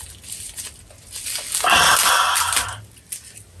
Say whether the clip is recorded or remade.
recorded